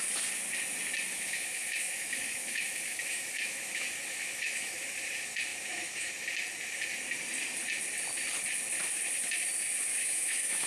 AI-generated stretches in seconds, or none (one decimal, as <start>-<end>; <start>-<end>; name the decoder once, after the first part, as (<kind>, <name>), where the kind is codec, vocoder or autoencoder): 1.1-4.7 (autoencoder, DAC-VAE); 5.5-6.1; 9.9-10.7